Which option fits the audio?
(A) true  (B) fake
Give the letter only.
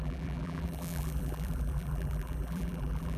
B